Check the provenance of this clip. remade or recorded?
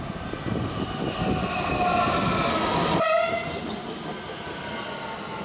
recorded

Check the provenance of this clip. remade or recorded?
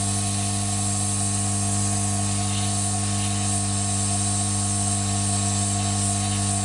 recorded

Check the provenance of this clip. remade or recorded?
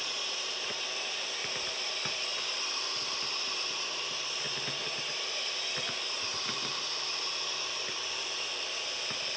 remade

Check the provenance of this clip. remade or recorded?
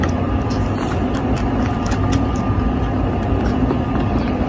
recorded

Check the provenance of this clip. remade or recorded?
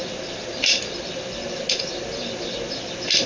recorded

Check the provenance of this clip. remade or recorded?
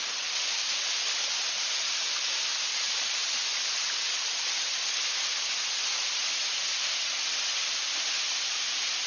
recorded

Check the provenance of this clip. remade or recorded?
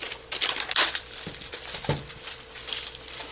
remade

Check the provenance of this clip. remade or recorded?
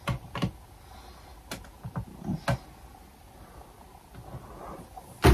recorded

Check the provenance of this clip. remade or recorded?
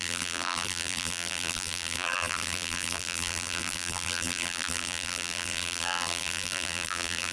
remade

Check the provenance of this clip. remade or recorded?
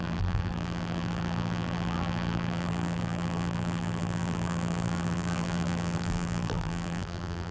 remade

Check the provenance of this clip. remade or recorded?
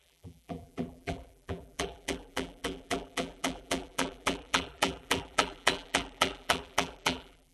remade